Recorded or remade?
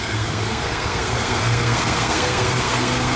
remade